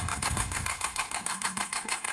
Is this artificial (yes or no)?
yes